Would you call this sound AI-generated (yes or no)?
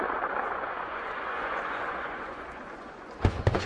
yes